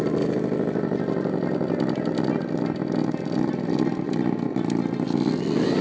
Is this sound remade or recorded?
recorded